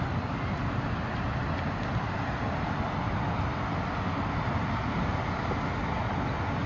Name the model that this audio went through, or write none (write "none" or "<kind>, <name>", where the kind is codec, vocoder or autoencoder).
none